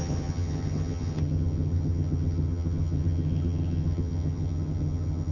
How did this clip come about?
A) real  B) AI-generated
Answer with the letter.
B